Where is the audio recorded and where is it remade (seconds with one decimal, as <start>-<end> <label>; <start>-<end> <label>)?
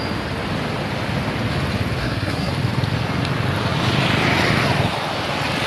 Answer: 0.0-2.0 recorded; 2.0-2.5 remade; 2.5-5.7 recorded